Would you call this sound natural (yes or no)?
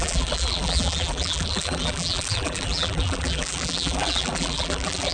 no